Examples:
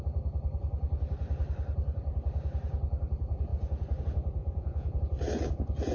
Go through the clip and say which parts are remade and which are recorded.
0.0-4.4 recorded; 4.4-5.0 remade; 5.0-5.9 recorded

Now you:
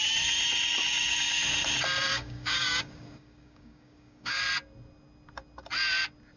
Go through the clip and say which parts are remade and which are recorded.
0.0-2.1 recorded; 2.1-4.4 remade; 4.4-6.4 recorded